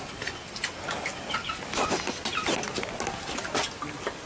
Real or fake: real